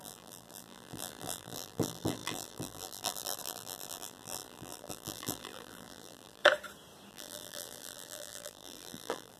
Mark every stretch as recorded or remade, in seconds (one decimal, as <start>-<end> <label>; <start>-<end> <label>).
0.0-6.4 remade; 6.4-7.1 recorded; 7.1-9.4 remade